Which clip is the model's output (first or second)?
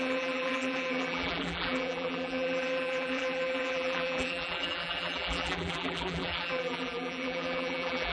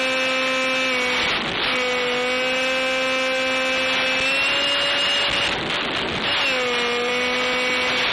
first